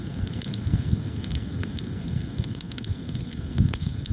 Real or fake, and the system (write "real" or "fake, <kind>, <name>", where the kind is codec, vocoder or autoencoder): fake, codec, SNAC